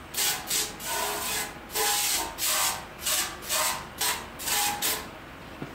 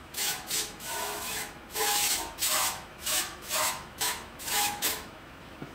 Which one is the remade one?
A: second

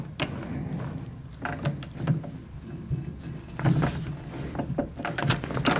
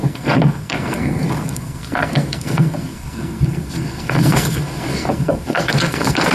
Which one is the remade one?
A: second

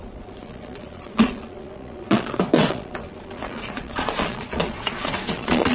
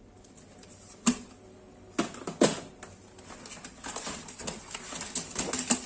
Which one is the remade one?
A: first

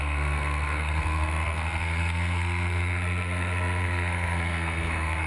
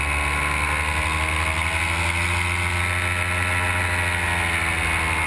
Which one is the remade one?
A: first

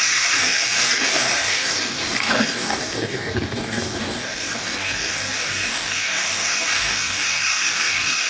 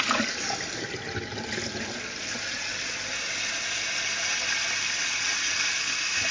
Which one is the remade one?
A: first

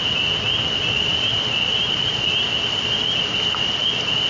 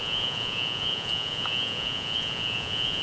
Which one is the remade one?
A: second